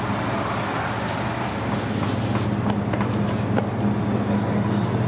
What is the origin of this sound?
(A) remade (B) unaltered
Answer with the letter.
B